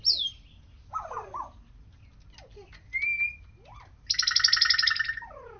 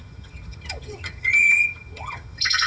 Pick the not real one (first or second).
second